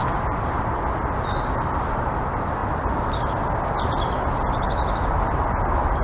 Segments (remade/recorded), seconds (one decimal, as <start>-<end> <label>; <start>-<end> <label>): 0.0-0.6 remade; 0.6-6.0 recorded

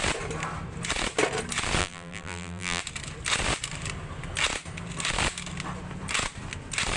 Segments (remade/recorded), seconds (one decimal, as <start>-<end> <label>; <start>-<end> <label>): 0.0-1.8 recorded; 1.8-2.8 remade; 2.8-7.0 recorded